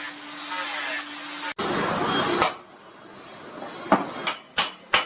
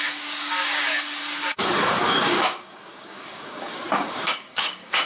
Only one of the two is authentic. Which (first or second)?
first